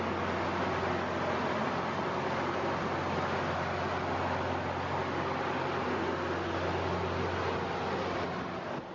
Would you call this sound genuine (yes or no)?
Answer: yes